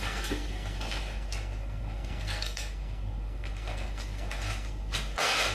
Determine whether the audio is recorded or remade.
remade